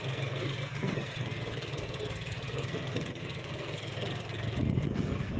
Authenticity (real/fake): fake